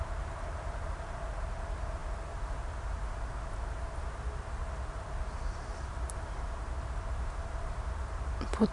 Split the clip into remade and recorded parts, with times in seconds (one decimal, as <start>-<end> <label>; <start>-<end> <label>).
0.0-8.7 recorded